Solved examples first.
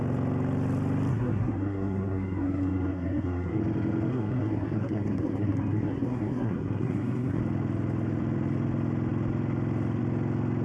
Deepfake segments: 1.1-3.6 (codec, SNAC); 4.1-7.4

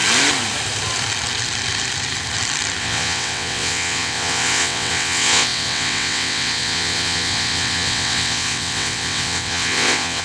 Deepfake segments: 2.8-10.2 (vocoder, WaveNeXt)